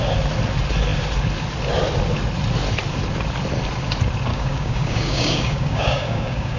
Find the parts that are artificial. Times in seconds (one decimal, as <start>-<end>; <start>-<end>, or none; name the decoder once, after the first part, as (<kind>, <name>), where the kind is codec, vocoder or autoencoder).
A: 4.3-6.6 (codec, DAC)